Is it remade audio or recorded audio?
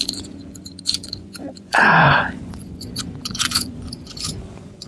remade